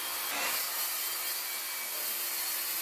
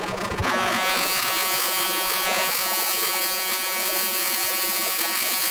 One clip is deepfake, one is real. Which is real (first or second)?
first